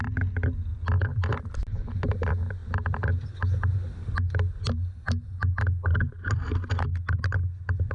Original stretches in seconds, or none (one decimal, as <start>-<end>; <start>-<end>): 0.0-7.9